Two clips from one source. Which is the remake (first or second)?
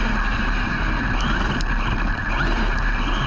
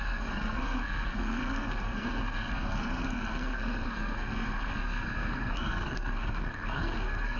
second